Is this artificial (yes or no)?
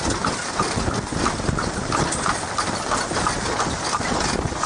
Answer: no